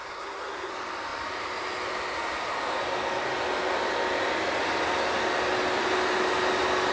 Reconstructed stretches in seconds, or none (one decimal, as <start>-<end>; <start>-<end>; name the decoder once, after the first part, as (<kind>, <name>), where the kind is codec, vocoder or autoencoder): 0.0-0.7 (codec, SNAC)